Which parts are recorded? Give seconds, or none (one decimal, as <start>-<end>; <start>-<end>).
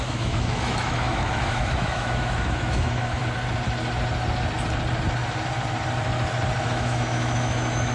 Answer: 3.2-6.6